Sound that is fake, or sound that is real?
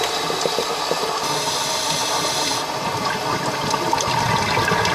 real